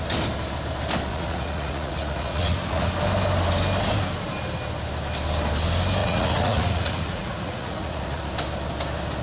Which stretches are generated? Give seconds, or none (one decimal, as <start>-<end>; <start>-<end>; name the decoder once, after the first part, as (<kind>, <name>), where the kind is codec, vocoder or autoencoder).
1.1-2.9 (vocoder, Vocos); 6.0-8.3